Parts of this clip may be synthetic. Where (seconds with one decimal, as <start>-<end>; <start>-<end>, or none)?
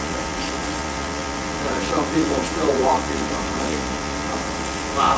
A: 0.0-5.2